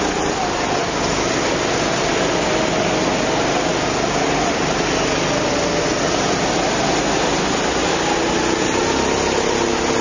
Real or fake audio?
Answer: real